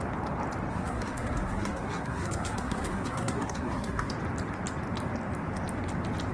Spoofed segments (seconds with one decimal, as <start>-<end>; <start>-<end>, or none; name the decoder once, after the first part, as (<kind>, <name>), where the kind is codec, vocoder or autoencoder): 0.7-4.1 (codec, SNAC)